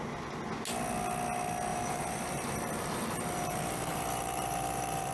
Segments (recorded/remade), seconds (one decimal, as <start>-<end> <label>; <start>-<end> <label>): 0.0-1.7 recorded; 1.7-5.1 remade